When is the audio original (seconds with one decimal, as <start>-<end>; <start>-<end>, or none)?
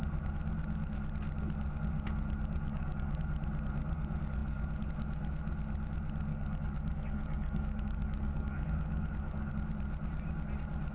0.0-2.7; 3.2-6.3; 9.5-10.9